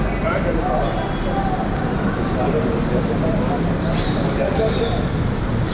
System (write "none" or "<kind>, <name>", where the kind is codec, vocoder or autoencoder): none